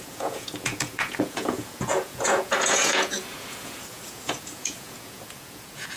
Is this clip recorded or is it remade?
remade